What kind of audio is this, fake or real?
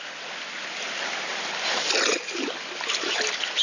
real